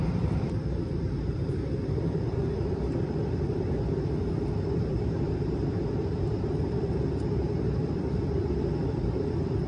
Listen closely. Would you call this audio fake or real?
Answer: fake